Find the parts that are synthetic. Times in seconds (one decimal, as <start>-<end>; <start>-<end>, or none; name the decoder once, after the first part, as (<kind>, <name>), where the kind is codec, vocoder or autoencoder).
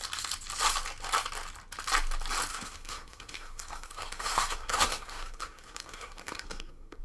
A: 2.5-7.0 (codec, SNAC)